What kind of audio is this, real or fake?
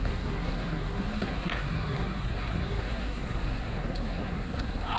fake